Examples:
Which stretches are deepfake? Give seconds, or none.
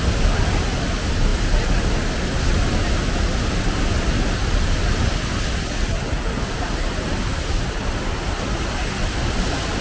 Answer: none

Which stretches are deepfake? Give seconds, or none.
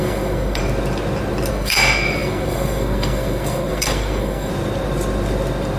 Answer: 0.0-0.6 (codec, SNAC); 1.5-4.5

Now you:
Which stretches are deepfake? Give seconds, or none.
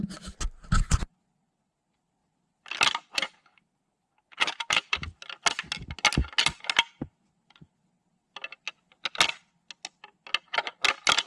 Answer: none